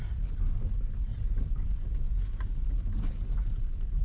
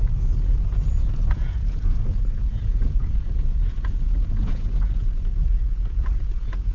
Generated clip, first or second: second